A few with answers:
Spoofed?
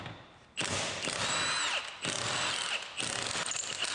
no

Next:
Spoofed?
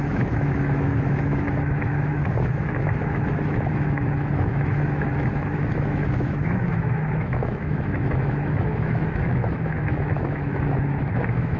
yes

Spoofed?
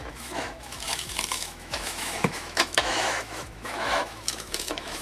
yes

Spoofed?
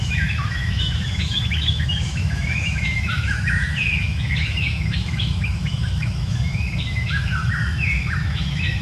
yes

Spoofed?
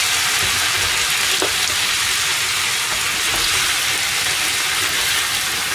no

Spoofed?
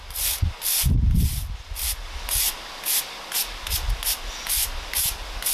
no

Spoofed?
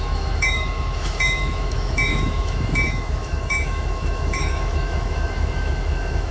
yes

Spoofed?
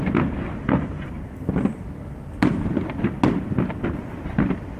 no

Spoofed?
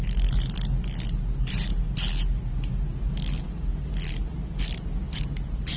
no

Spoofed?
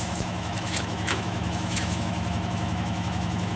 yes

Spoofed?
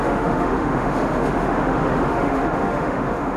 yes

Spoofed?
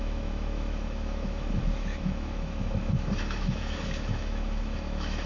yes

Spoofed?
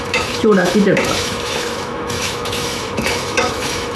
yes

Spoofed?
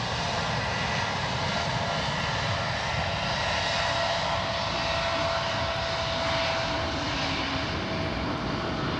no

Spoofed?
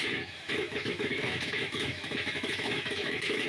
yes